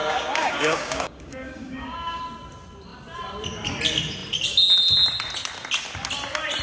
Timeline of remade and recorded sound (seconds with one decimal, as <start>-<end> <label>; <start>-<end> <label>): 0.0-2.2 remade; 2.2-6.6 recorded